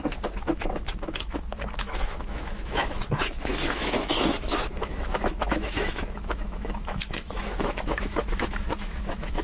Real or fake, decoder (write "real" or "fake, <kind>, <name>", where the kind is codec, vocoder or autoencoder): fake, autoencoder, DAC-VAE